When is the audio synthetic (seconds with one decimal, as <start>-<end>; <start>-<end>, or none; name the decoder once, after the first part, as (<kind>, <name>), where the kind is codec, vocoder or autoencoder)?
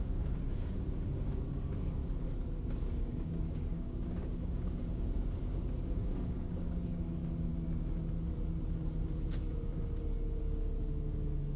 0.0-2.0 (codec, DAC); 2.8-7.5; 10.4-11.6